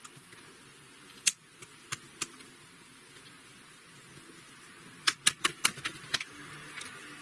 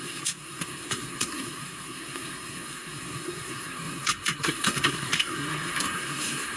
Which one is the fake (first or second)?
second